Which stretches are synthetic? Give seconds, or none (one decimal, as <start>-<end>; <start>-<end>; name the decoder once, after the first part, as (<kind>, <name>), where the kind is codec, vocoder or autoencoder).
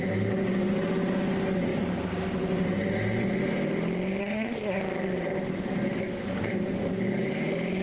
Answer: 4.2-4.8 (codec, SNAC)